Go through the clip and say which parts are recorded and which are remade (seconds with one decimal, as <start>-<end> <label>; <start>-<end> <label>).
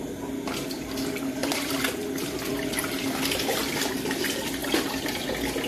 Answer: 0.0-1.4 recorded; 1.4-3.6 remade; 3.6-5.7 recorded